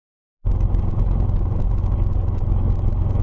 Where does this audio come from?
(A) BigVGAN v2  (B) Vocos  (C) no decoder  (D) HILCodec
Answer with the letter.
C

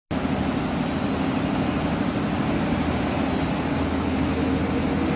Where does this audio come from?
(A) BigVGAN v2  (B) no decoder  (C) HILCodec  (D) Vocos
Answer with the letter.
B